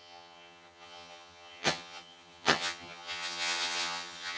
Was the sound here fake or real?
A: fake